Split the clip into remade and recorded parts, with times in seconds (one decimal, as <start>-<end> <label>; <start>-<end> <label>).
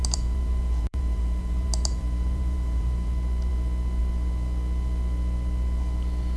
0.0-3.1 remade; 3.1-6.4 recorded